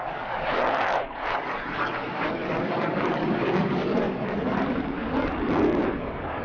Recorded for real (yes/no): no